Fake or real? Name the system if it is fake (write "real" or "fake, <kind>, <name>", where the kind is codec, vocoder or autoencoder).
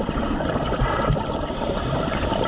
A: real